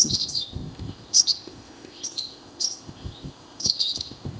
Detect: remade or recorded remade